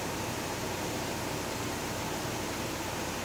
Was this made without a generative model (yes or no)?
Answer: no